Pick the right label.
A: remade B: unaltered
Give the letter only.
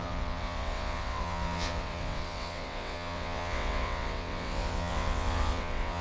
A